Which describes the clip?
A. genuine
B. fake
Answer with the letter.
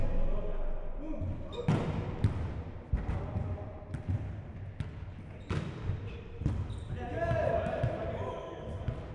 A